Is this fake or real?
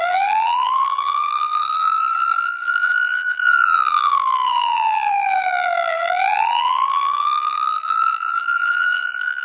fake